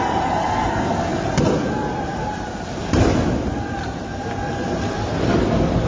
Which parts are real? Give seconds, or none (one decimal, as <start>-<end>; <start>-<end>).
none